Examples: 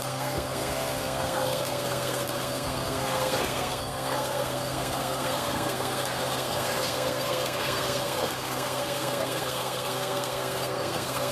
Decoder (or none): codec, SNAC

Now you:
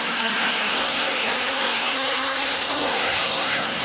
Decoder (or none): codec, SNAC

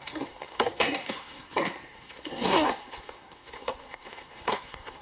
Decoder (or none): codec, SNAC